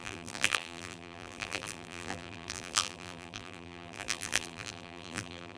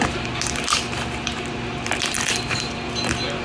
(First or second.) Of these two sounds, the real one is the second